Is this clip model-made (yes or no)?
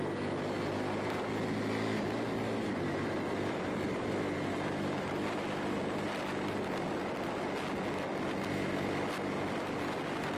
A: no